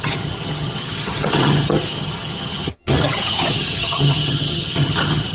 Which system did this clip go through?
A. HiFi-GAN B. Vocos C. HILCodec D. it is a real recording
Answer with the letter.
A